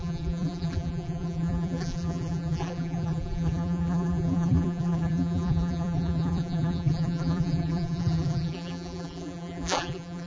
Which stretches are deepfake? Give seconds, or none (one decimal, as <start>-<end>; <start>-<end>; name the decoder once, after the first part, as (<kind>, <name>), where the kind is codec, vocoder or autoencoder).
0.0-10.3 (vocoder, BigVGAN v2)